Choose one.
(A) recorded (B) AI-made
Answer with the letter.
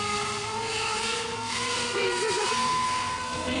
B